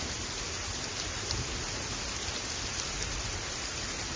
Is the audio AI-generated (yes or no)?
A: no